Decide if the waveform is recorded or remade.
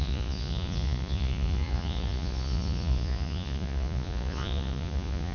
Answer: remade